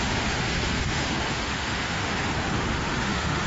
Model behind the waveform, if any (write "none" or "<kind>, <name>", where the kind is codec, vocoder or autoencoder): autoencoder, DAC-VAE